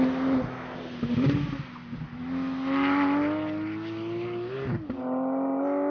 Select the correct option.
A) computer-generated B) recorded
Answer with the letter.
B